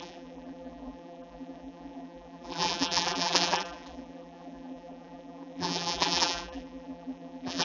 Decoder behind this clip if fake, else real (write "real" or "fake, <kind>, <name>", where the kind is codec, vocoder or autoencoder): fake, vocoder, BigVGAN v2